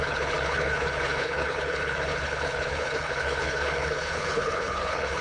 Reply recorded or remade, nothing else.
remade